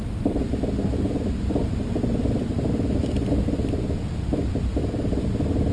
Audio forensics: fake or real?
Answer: fake